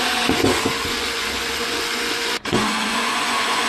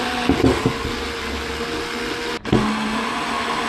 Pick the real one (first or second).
second